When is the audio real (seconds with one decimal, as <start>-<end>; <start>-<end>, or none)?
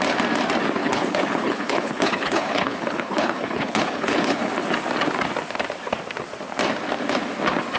0.0-0.8; 4.5-7.8